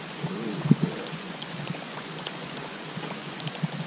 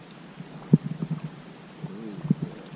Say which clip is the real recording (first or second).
second